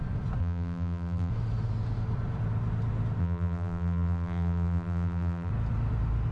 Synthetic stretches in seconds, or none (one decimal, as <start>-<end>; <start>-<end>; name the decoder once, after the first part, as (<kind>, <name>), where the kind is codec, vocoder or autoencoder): 0.4-1.3 (vocoder, BigVGAN v2); 3.2-5.5